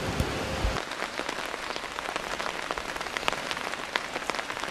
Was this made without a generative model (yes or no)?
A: yes